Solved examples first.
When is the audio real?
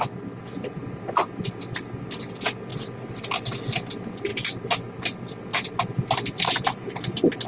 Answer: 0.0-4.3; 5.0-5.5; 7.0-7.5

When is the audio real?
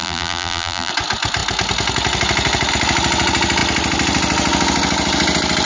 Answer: 0.9-5.7